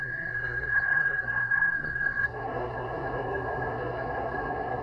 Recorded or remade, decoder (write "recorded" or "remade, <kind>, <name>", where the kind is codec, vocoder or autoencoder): remade, codec, SNAC